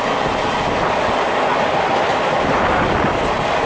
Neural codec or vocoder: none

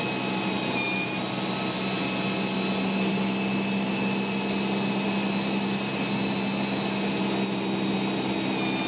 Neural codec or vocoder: none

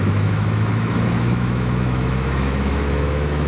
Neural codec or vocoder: autoencoder, DAC-VAE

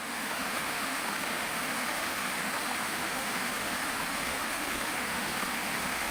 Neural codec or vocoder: autoencoder, DAC-VAE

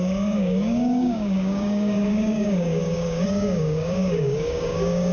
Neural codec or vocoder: codec, DAC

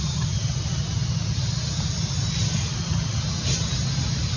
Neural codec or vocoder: none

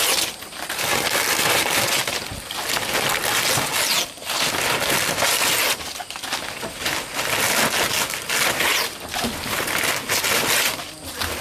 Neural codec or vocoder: none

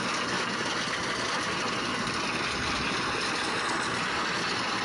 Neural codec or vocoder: none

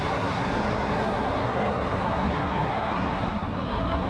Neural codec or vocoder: codec, SNAC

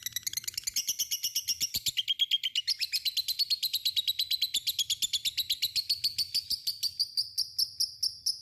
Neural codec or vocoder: none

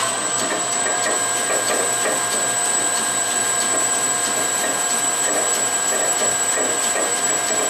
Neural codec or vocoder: vocoder, BigVGAN v2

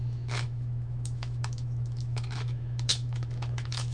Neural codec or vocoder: autoencoder, DAC-VAE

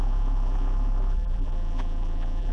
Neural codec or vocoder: vocoder, BigVGAN v2